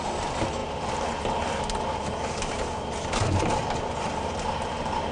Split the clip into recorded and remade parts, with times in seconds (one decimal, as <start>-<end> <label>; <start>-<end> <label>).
0.0-5.1 recorded